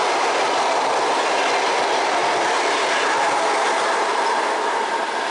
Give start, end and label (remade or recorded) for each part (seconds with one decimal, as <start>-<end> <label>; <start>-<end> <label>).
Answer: 0.0-5.3 recorded